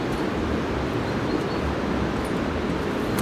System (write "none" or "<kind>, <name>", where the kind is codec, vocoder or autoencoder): none